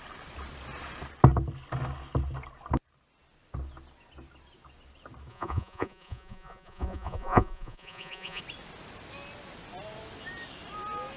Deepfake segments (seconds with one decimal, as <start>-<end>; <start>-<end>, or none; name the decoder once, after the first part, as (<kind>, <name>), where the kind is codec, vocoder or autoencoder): 5.3-8.4 (vocoder, Vocos)

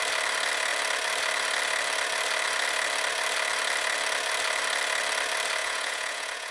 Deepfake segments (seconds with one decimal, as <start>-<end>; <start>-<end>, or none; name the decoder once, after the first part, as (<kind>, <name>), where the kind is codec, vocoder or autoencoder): 5.6-6.5 (vocoder, Vocos)